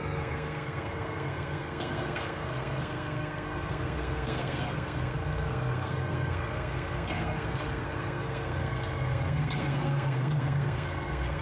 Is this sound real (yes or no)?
no